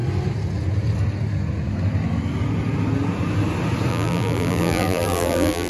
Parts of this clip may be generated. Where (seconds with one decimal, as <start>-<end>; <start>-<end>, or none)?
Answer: 3.9-5.7